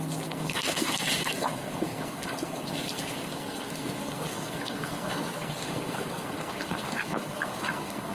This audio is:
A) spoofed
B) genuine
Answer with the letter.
A